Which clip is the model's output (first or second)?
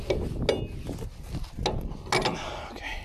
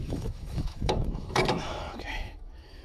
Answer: second